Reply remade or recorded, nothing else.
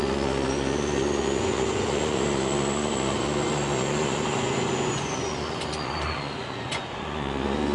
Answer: remade